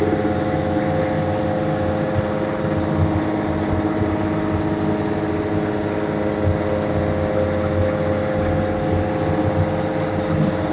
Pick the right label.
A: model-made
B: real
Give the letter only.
B